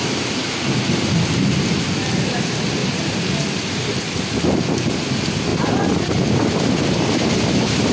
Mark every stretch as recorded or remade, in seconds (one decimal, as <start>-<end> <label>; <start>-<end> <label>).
0.0-0.4 recorded; 0.4-1.1 remade; 1.1-2.8 recorded; 2.8-4.2 remade; 4.2-7.9 recorded